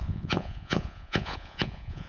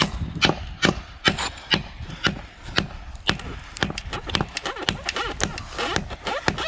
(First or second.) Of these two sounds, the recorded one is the second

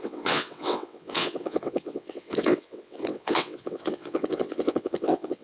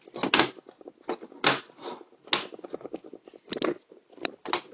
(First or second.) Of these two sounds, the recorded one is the second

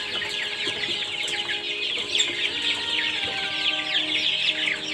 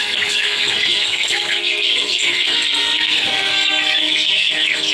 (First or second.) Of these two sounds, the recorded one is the first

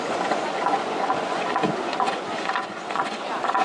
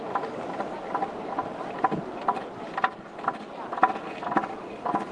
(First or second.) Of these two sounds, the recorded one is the second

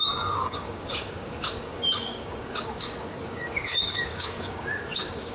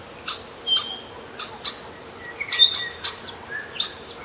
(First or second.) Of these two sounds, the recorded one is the second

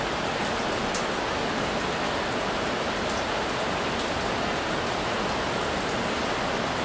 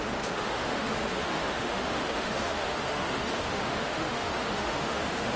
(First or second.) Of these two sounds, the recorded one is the first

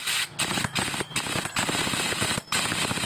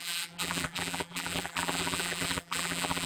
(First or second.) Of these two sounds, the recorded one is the first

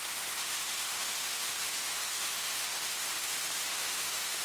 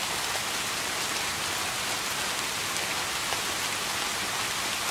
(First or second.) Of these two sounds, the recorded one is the second